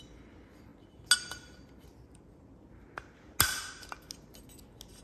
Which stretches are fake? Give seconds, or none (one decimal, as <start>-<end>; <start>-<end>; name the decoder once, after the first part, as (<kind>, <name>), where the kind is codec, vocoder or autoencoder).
none